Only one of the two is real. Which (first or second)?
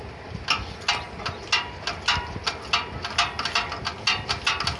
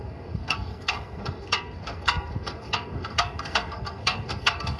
first